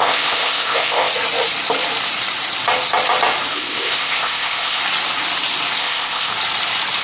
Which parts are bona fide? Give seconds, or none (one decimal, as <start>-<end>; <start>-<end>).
1.1-3.5; 4.8-5.8; 6.3-7.0